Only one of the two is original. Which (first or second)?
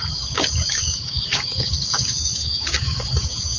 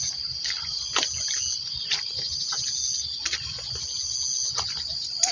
second